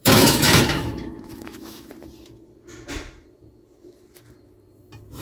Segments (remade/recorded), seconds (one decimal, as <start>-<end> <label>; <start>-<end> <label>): 0.0-1.9 remade; 1.9-5.2 recorded